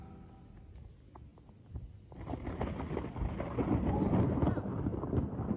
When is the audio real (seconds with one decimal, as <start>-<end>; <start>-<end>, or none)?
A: 0.0-5.6